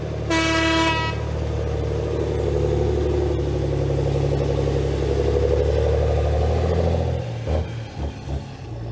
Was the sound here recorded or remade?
recorded